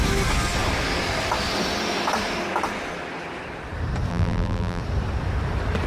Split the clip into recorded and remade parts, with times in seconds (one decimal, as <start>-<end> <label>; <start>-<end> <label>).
0.0-4.1 recorded; 4.1-4.8 remade; 4.8-5.9 recorded